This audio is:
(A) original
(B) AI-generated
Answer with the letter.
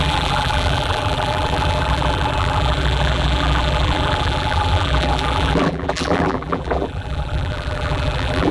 B